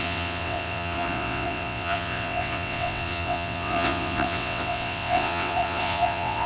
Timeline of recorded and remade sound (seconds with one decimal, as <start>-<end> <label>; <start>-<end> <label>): 0.0-6.5 remade

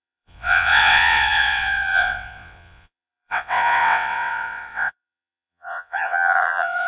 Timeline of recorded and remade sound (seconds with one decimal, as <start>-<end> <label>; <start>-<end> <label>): 0.0-6.9 remade

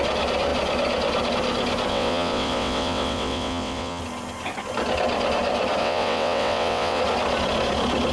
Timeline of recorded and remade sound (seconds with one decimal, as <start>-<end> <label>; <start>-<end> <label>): 0.0-1.9 recorded; 1.9-4.0 remade; 4.0-5.8 recorded; 5.8-7.0 remade; 7.0-8.1 recorded